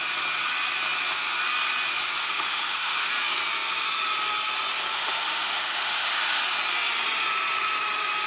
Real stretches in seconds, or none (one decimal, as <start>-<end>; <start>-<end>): 0.0-2.2; 3.1-4.9; 6.4-8.3